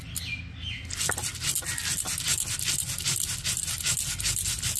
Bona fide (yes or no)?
yes